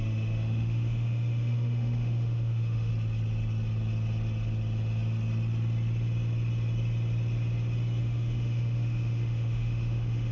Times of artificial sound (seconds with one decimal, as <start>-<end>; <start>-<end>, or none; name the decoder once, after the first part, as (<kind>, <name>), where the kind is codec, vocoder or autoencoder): 0.0-2.9 (autoencoder, DAC-VAE); 8.0-10.3